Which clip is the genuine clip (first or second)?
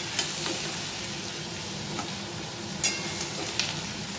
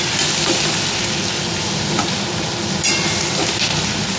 first